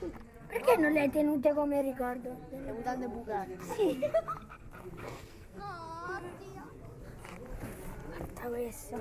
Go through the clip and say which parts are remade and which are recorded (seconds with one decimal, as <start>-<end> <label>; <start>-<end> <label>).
0.0-1.4 recorded; 1.4-2.2 remade; 2.2-3.2 recorded; 3.2-4.1 remade; 4.1-5.0 recorded; 5.0-5.6 remade; 5.6-9.0 recorded